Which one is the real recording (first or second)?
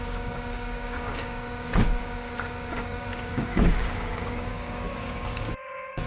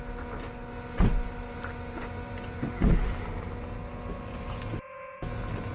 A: second